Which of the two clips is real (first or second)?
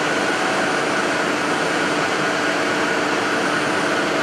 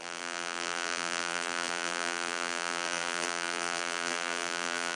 first